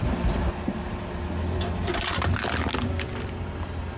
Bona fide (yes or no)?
yes